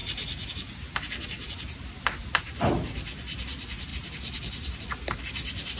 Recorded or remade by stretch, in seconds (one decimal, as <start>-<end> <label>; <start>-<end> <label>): 0.0-2.4 remade; 2.4-3.9 recorded; 3.9-5.2 remade; 5.2-5.8 recorded